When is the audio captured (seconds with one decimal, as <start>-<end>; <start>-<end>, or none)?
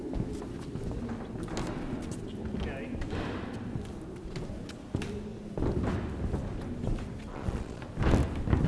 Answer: 0.0-7.3; 7.8-8.7